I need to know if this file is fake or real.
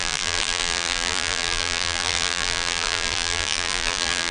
fake